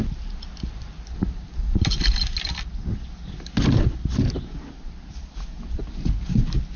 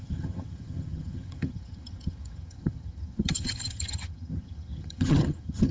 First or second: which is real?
first